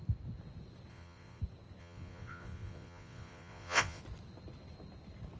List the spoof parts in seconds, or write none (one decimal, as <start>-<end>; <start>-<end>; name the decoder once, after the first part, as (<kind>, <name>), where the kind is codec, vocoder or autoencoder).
0.9-1.4 (vocoder, Vocos); 1.8-4.0